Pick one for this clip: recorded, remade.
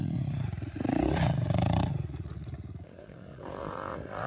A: remade